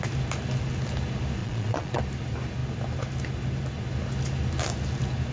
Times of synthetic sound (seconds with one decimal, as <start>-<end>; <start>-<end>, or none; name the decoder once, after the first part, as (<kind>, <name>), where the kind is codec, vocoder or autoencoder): 1.4-2.0 (vocoder, Vocos)